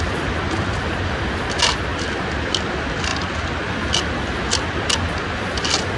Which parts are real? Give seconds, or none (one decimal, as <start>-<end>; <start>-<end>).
0.0-6.0